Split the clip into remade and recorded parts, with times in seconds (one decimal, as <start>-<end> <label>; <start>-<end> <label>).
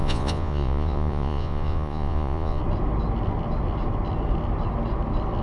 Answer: 0.0-2.6 remade; 2.6-5.4 recorded